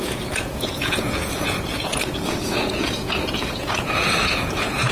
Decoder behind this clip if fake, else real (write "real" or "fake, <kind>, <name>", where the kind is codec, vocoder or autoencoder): fake, vocoder, Vocos